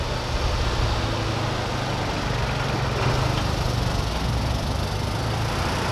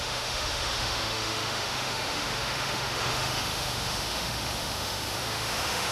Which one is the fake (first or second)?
second